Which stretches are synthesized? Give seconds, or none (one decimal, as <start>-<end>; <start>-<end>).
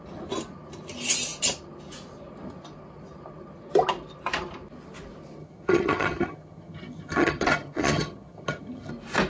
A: 5.4-8.9